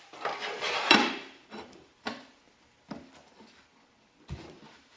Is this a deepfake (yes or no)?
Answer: yes